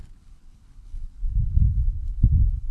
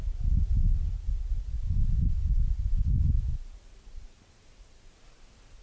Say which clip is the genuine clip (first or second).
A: second